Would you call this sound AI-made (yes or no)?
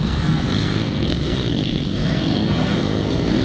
yes